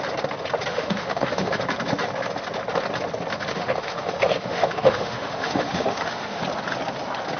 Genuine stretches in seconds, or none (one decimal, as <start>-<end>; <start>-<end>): 0.0-0.7; 1.6-3.5; 6.4-7.4